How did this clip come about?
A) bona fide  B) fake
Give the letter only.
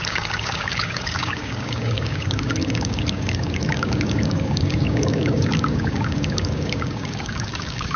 B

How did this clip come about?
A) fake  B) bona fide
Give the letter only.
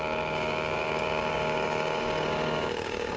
A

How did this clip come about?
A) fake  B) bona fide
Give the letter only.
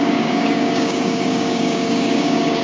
A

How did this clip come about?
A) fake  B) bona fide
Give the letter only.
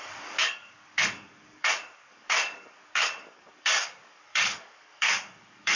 A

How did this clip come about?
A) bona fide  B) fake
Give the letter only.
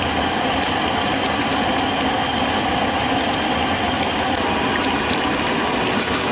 A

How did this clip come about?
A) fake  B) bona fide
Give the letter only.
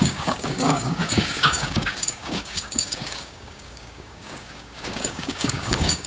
A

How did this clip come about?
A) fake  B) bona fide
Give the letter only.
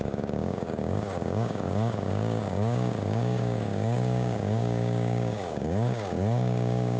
A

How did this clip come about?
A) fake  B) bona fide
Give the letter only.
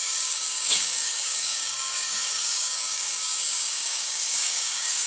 A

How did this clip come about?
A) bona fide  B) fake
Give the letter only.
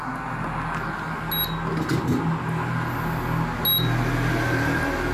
A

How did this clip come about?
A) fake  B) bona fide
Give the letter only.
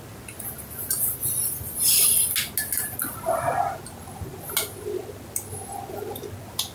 B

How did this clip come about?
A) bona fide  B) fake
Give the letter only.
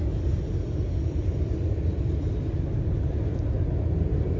A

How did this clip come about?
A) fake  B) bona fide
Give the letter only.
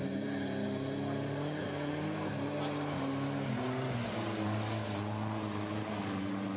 B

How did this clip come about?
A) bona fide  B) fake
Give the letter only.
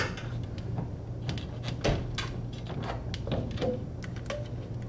A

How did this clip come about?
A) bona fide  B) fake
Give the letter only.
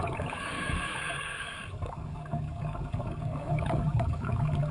B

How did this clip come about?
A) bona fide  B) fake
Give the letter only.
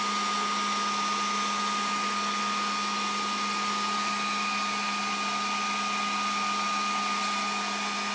A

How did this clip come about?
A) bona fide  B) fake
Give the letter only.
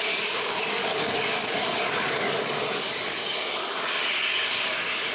B